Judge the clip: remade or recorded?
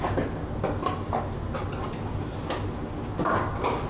recorded